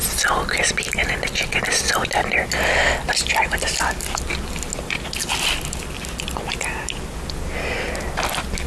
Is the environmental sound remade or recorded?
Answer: recorded